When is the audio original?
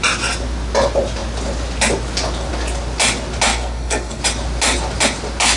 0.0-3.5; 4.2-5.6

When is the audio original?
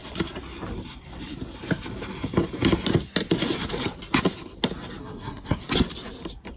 0.0-5.0; 5.6-6.6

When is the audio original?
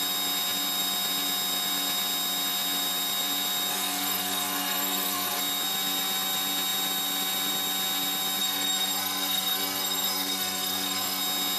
0.0-3.7; 5.4-8.4; 11.2-11.6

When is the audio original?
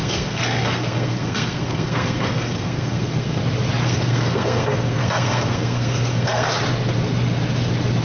3.4-3.8; 6.5-8.0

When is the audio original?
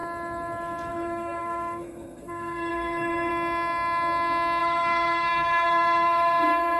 0.0-0.9; 3.3-4.6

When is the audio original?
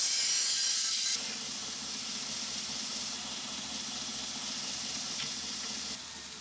0.0-6.4